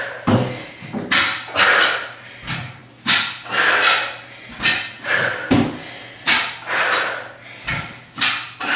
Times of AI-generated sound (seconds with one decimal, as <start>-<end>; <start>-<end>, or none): none